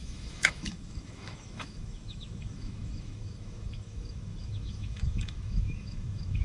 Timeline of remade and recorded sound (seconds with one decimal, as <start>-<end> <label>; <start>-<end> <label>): 0.0-6.4 remade